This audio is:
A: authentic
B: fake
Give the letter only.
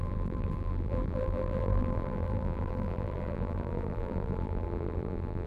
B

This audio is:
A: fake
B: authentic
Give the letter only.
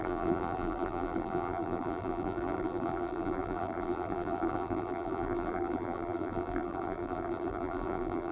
A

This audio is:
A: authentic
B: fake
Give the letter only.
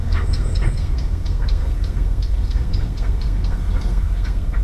B